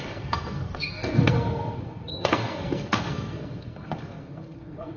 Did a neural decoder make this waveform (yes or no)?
yes